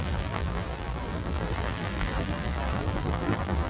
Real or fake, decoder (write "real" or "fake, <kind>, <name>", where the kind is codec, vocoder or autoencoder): fake, vocoder, BigVGAN v2